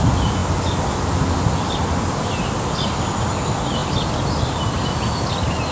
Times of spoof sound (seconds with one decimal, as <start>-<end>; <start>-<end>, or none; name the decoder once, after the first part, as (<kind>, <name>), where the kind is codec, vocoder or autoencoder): none